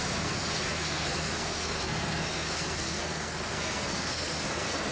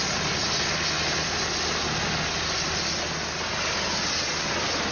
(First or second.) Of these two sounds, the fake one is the first